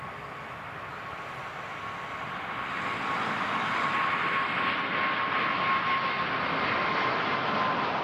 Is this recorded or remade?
recorded